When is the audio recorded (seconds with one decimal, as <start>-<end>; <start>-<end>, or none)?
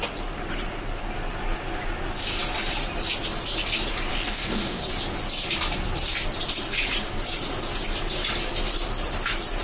0.0-4.1; 4.8-9.6